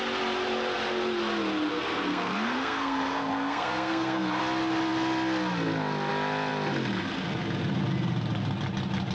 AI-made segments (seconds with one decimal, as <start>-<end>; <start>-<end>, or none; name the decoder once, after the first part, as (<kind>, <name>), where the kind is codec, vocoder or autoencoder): 1.7-4.4 (codec, SNAC)